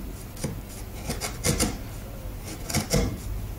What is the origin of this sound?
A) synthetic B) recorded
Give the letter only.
B